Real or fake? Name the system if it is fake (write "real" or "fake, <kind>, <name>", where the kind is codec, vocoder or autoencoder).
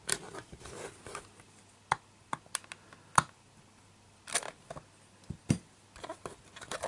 real